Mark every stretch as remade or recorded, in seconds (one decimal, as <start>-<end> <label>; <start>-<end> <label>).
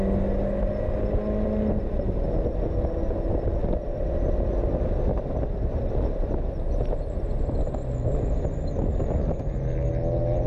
0.0-10.5 recorded